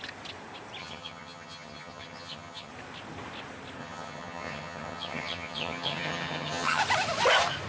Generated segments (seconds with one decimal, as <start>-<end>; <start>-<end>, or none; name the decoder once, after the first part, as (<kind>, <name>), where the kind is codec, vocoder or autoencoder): 0.8-2.7 (vocoder, HiFi-GAN); 3.8-6.8